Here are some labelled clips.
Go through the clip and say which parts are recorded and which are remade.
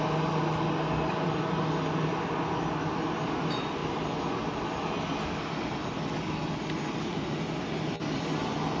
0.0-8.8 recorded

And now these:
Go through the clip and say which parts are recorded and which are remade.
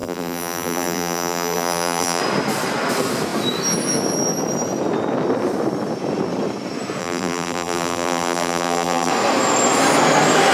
0.0-2.2 remade; 2.2-7.0 recorded; 7.0-9.1 remade; 9.1-10.5 recorded